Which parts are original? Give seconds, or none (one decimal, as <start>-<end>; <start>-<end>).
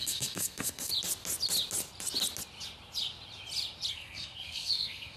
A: 0.9-3.9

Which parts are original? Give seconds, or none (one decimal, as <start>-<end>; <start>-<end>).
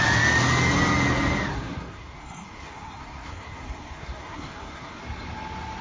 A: 0.0-1.5; 5.0-5.8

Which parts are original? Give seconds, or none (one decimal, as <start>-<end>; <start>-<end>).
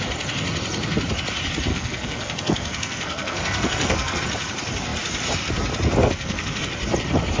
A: 0.0-1.7; 4.2-6.0; 6.6-7.4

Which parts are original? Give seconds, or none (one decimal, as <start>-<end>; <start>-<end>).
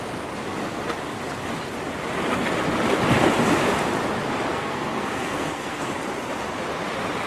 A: 0.0-4.5; 5.9-7.3